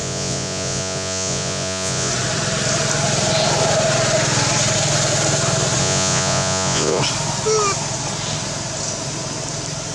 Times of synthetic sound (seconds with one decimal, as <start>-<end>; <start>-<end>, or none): 0.0-2.1; 5.8-7.0